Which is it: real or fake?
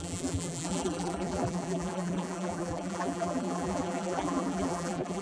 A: fake